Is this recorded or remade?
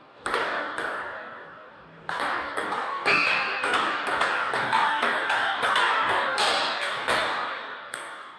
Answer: remade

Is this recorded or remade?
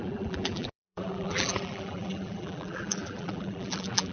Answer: remade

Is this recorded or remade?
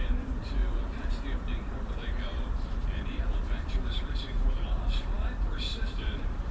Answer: remade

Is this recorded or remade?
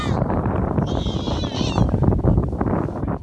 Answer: remade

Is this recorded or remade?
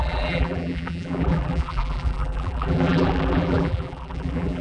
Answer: remade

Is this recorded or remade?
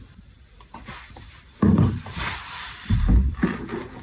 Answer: remade